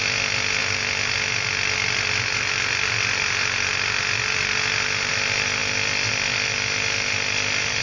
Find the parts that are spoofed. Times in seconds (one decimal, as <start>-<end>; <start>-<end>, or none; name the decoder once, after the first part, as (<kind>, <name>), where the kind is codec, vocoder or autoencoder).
none